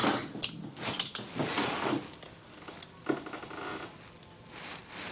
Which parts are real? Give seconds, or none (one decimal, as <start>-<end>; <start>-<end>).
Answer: 0.0-5.1